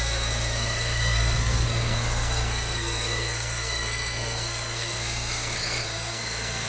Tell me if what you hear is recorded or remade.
remade